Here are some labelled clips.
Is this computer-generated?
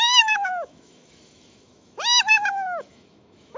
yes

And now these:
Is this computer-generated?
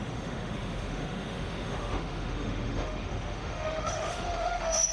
yes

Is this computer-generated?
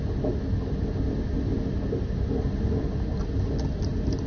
no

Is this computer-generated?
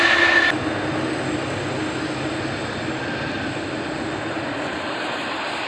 no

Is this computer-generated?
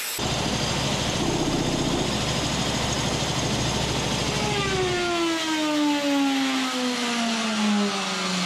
no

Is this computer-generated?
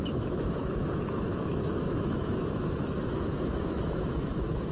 yes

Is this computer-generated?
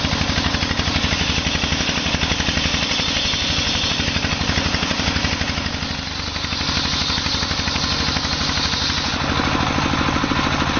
no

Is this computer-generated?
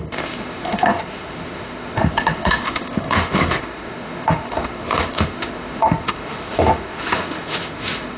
yes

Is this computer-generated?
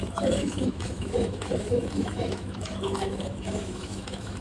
yes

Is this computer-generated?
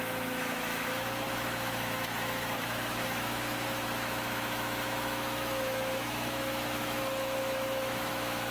yes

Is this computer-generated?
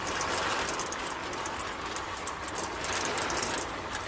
no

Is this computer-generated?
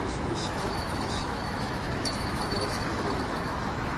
yes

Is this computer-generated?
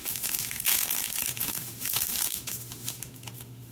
yes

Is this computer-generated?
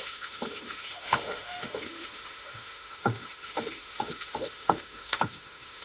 yes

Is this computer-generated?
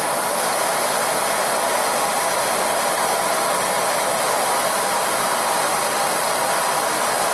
no